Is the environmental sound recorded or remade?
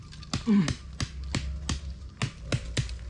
recorded